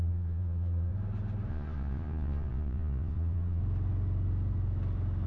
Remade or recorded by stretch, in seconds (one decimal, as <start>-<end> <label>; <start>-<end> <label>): 0.0-0.9 remade; 0.9-1.5 recorded; 1.5-3.6 remade; 3.6-5.3 recorded